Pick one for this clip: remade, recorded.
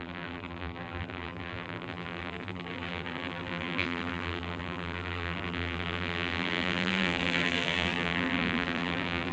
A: remade